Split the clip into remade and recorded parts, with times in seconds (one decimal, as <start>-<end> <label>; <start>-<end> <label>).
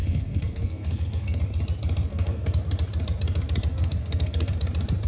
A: 0.0-1.4 remade; 1.4-2.1 recorded; 2.1-2.6 remade; 2.6-3.7 recorded; 3.7-4.5 remade; 4.5-5.1 recorded